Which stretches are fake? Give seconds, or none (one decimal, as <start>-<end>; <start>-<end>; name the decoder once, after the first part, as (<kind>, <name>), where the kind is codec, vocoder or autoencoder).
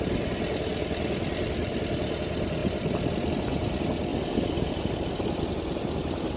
0.7-1.7 (vocoder, BigVGAN v2); 2.6-3.3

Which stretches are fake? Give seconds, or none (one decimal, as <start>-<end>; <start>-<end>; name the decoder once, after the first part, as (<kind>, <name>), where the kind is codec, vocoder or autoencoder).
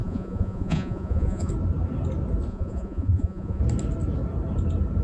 0.0-1.5 (vocoder, Vocos); 2.5-3.6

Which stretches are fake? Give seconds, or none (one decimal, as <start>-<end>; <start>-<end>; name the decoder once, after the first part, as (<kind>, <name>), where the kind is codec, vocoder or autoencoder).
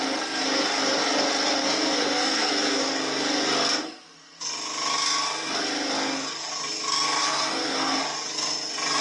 1.6-2.8 (codec, SNAC); 3.8-4.4; 7.2-8.0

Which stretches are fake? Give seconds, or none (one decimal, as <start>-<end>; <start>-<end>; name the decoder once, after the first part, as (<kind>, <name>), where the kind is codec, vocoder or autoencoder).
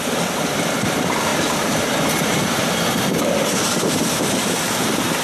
1.3-4.4 (vocoder, BigVGAN v2)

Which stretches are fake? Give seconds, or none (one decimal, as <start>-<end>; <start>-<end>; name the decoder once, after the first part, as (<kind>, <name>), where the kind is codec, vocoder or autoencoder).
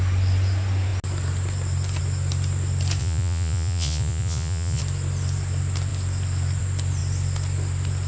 3.0-4.8 (vocoder, Vocos)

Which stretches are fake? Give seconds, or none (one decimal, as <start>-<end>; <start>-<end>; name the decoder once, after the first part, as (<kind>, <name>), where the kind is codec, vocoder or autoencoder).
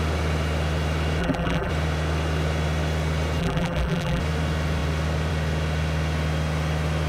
1.2-1.7 (vocoder, BigVGAN v2); 3.4-4.2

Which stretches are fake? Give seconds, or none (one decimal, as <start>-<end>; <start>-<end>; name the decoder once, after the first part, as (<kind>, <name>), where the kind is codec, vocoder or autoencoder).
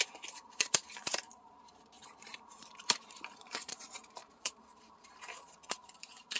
0.0-6.4 (vocoder, BigVGAN v2)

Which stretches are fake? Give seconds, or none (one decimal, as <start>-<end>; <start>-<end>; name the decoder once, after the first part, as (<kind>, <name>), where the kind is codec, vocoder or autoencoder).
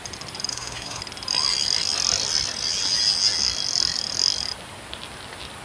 0.5-1.0 (codec, SNAC)